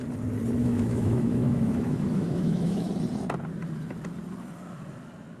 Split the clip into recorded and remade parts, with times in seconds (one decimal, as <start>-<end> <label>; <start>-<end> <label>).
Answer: 0.0-0.6 recorded; 0.6-2.9 remade; 2.9-5.4 recorded